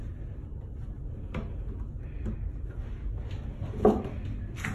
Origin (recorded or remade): recorded